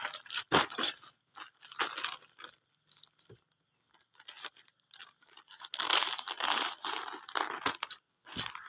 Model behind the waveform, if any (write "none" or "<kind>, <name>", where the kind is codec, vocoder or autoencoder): none